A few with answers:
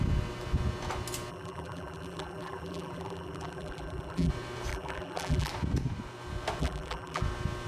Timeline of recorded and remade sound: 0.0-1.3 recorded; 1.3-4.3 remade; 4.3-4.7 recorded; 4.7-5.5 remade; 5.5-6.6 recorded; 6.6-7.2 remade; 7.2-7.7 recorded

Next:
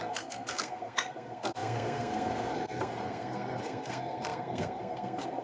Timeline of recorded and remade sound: 0.0-5.4 remade

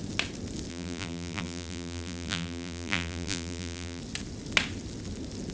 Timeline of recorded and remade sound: 0.0-0.7 recorded; 0.7-4.0 remade; 4.0-5.5 recorded

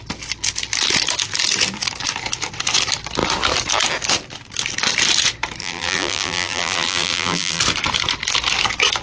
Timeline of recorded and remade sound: 0.0-5.6 recorded; 5.6-7.6 remade; 7.6-9.0 recorded

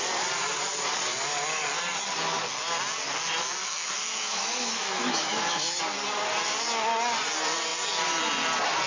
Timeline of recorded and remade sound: 0.0-3.6 recorded; 3.6-5.8 remade; 5.8-8.9 recorded